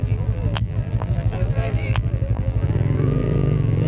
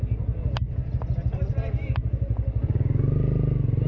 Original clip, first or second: second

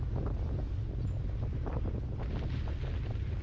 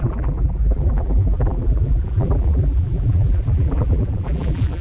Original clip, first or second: first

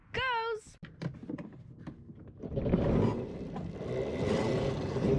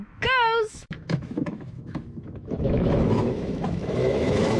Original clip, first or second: first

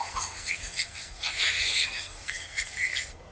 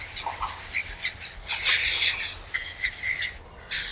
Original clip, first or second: second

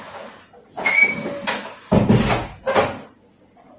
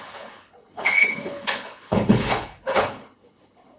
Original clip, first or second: first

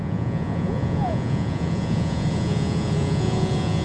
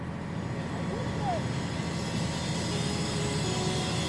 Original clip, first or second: second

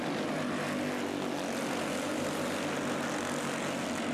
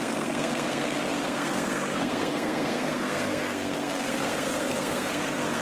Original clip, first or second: first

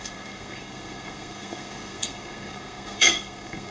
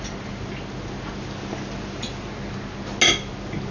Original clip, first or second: second